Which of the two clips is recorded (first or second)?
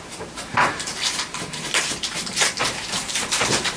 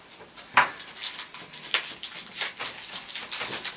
second